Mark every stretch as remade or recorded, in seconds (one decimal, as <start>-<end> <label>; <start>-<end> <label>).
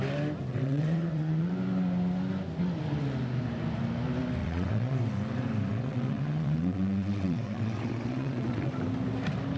0.0-0.5 recorded; 0.5-1.5 remade; 1.5-4.4 recorded; 4.4-5.0 remade; 5.0-5.7 recorded; 5.7-8.7 remade; 8.7-9.6 recorded